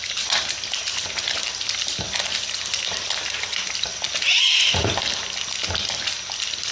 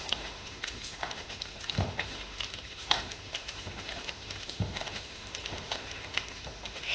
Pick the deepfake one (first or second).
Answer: second